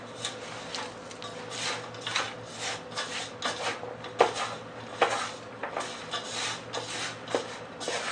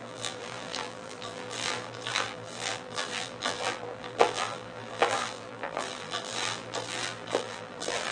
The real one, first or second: first